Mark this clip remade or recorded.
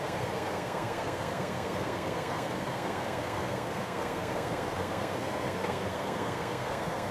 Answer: remade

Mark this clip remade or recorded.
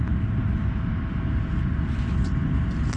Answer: recorded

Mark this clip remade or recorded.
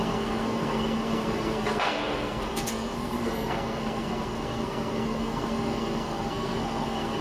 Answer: remade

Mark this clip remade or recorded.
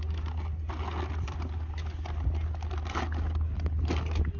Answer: recorded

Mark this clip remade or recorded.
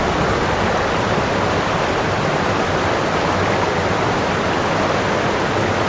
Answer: recorded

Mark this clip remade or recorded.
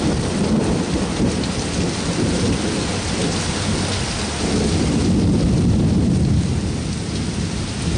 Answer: recorded